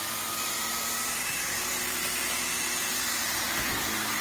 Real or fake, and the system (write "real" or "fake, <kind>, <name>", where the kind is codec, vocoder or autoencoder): fake, vocoder, BigVGAN v2